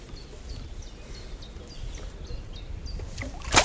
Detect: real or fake real